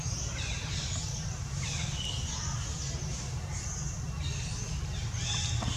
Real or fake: real